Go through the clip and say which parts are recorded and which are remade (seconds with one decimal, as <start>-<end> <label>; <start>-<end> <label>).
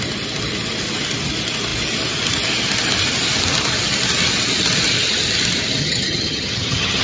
0.0-5.8 recorded; 5.8-7.0 remade